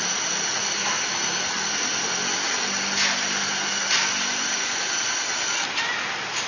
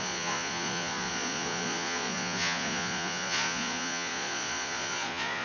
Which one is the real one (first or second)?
first